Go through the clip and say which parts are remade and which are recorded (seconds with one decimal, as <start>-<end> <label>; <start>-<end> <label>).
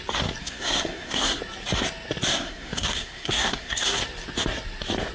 0.0-0.4 recorded; 0.4-1.4 remade; 1.4-2.3 recorded; 2.3-4.0 remade; 4.0-5.1 recorded